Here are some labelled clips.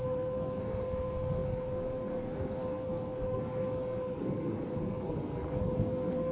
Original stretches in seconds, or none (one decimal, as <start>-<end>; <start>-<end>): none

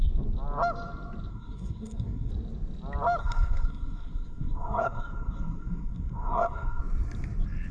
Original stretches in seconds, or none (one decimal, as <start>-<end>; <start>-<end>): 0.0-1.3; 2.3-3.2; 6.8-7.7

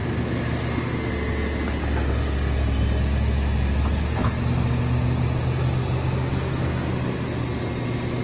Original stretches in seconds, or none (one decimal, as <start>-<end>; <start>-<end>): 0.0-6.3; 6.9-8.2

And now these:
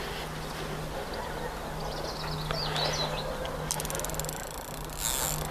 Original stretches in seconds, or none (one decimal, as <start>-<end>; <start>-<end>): 0.0-5.5

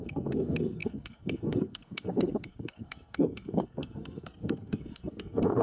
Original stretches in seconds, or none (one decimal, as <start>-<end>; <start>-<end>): none